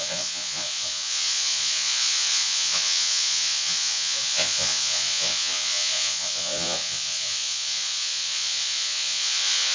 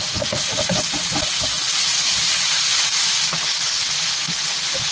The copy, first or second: first